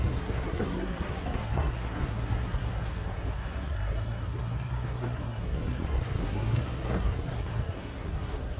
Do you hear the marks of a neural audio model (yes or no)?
yes